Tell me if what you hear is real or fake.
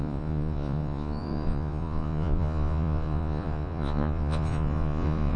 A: fake